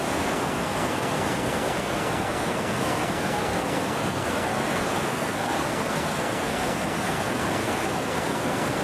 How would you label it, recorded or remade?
remade